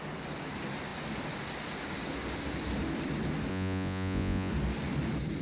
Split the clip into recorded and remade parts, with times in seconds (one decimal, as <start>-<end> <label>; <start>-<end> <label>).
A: 0.0-3.5 recorded; 3.5-4.5 remade; 4.5-5.4 recorded